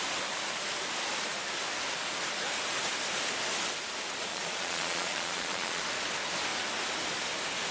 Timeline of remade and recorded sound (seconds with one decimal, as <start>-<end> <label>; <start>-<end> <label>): 0.0-4.3 recorded; 4.3-5.8 remade; 5.8-7.7 recorded